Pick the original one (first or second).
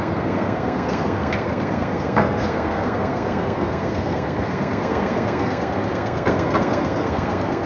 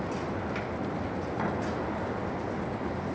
second